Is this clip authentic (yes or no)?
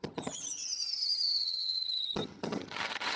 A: no